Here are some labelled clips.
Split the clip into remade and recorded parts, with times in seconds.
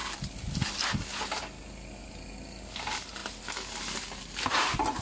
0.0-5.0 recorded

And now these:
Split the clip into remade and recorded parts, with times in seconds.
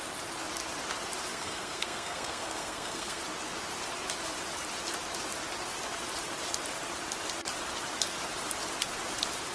0.0-1.3 recorded; 1.3-3.2 remade; 3.2-9.5 recorded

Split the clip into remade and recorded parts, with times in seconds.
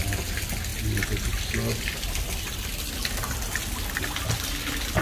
0.0-5.0 recorded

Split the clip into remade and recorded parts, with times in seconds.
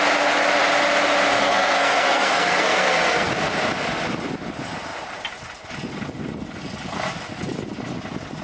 0.0-1.4 recorded; 1.4-3.3 remade; 3.3-8.4 recorded